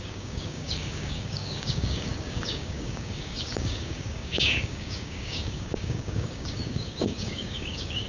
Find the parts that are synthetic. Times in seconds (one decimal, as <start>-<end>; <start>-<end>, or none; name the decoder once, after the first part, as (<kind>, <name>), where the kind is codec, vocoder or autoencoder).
0.0-8.1 (codec, DAC)